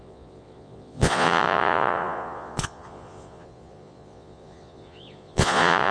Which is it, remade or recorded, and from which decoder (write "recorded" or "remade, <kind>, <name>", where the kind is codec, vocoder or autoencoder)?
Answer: remade, vocoder, Vocos